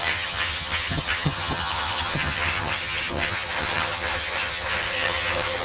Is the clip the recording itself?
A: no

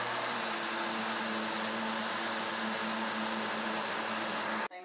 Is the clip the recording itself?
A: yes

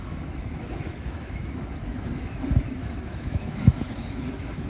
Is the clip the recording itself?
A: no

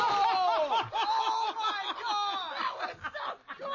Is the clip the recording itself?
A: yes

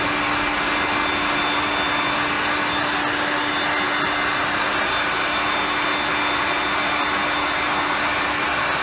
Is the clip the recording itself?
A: yes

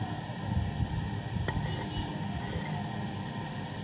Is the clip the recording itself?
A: yes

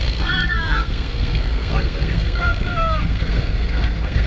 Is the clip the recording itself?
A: no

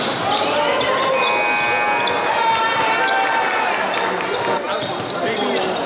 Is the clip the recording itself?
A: yes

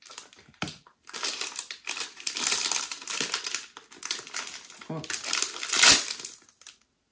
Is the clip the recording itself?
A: yes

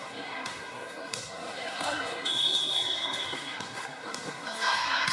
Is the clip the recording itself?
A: no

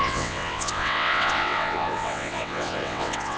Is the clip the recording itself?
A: no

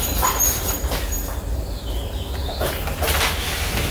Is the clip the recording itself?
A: yes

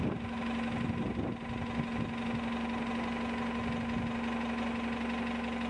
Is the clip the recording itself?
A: yes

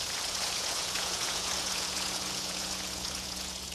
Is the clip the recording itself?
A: no